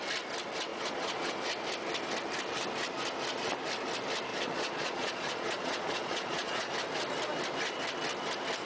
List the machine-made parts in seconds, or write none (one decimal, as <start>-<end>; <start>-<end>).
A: 0.7-1.3; 4.3-6.7

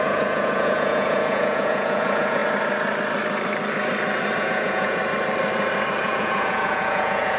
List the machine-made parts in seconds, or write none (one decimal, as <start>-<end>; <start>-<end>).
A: 0.0-2.4; 4.4-5.0; 6.0-7.4

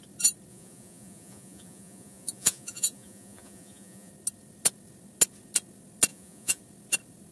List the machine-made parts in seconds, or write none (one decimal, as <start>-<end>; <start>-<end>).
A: 0.5-4.1; 6.1-6.6

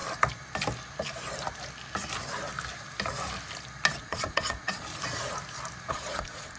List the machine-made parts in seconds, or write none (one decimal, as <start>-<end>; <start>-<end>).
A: 4.0-4.9; 5.9-6.6

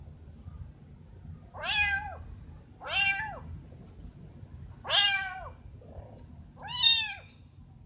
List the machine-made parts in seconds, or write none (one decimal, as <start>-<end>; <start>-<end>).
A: none

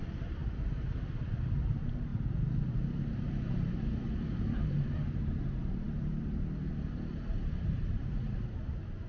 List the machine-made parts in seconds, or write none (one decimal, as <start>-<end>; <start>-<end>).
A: 0.0-9.1